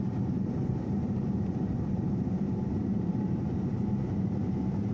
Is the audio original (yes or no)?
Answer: no